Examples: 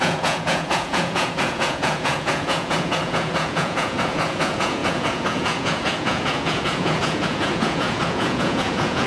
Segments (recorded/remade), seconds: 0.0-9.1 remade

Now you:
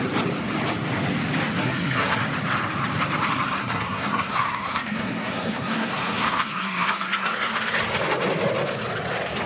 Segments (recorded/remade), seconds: 0.0-1.6 recorded; 1.6-2.2 remade; 2.2-3.6 recorded; 3.6-7.5 remade; 7.5-9.5 recorded